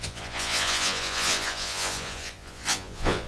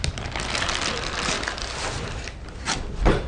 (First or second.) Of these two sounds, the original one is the second